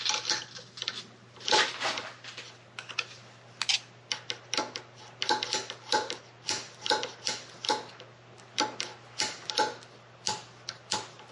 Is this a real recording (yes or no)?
yes